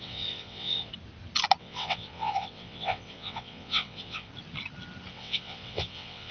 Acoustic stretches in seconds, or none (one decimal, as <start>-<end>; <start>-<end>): 0.9-1.6; 4.3-5.1